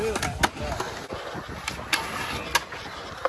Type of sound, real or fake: real